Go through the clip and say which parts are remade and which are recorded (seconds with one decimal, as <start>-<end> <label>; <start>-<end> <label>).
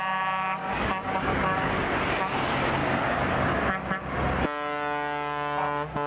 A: 0.0-0.6 recorded; 0.6-1.7 remade; 1.7-2.8 recorded; 2.8-3.6 remade; 3.6-6.1 recorded